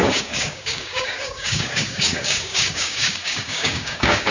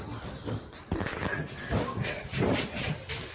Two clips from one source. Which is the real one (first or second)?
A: second